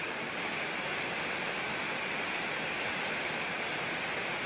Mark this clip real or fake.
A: real